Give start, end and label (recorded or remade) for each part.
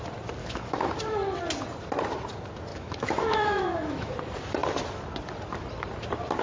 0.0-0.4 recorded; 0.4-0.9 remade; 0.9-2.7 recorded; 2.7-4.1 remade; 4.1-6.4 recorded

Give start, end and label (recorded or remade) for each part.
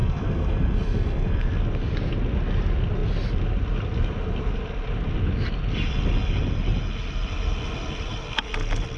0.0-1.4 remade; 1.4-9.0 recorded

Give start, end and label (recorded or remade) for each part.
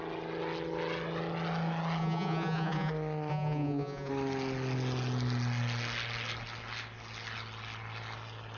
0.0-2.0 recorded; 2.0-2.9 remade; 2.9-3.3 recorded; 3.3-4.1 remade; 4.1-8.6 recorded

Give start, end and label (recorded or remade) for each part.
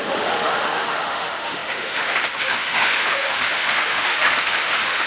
0.0-5.1 remade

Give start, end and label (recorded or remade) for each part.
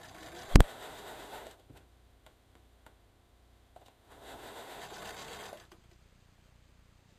0.0-0.5 recorded; 0.5-4.8 remade; 4.8-7.2 recorded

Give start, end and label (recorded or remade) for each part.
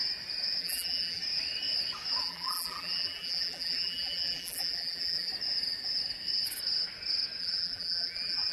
0.0-0.6 recorded; 0.6-1.2 remade; 1.2-2.2 recorded; 2.2-5.3 remade; 5.3-7.4 recorded; 7.4-8.5 remade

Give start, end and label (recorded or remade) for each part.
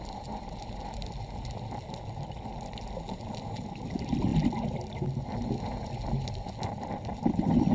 0.0-7.7 recorded